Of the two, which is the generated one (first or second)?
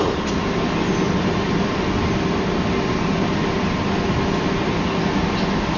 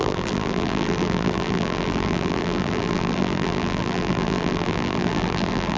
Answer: second